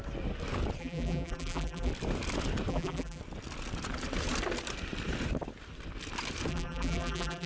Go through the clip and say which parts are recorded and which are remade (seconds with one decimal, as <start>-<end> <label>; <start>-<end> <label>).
0.0-0.8 recorded; 0.8-1.9 remade; 1.9-2.7 recorded; 2.7-3.2 remade; 3.2-6.5 recorded; 6.5-7.5 remade